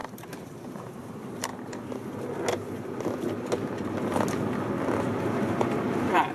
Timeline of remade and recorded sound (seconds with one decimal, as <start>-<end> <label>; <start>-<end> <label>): 0.0-1.5 remade; 1.5-5.3 recorded; 5.3-6.3 remade